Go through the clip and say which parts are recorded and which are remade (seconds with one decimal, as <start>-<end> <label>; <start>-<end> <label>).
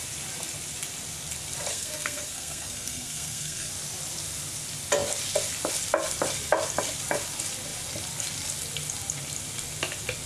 0.0-1.7 recorded; 1.7-3.7 remade; 3.7-10.3 recorded